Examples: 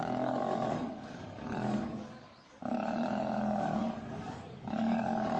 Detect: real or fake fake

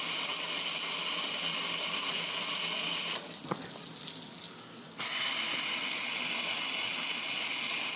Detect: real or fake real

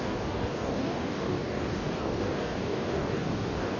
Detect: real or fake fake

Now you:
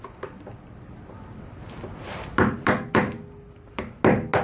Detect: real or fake real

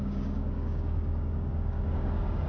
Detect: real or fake fake